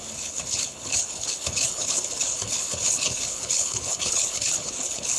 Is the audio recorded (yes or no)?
no